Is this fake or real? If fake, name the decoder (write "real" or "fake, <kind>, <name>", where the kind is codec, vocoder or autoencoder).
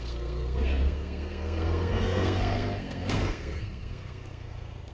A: fake, codec, SNAC